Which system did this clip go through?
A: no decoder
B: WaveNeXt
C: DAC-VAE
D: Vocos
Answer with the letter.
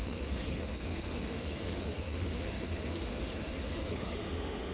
C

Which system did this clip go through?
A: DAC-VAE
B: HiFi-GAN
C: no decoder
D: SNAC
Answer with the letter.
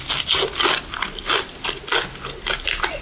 C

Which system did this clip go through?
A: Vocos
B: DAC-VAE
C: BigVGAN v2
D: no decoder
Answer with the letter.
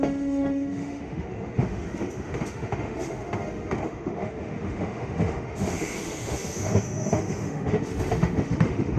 B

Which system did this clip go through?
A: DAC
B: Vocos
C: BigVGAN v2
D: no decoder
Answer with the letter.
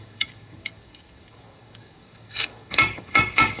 A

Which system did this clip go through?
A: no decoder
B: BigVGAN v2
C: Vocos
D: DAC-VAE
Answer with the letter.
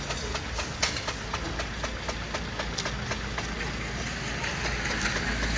A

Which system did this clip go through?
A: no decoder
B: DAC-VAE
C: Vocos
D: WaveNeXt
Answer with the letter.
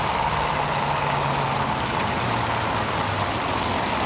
A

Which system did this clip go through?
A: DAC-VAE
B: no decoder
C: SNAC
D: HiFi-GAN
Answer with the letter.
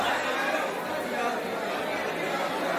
B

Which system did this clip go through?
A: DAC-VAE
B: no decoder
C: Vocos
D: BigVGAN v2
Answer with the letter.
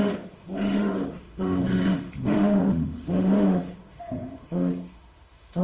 A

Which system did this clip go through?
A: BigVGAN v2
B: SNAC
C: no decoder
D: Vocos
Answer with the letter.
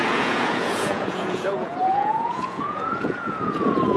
D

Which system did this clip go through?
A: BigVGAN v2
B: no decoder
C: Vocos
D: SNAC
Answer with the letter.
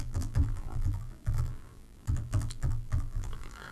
A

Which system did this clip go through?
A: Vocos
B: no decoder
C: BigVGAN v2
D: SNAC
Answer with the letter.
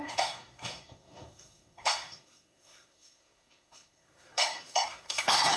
D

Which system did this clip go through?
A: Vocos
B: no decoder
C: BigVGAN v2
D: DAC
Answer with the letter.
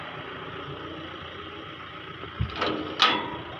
B